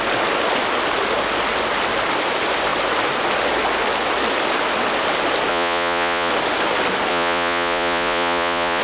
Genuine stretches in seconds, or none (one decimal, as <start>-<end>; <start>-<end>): 0.0-5.5; 6.3-7.1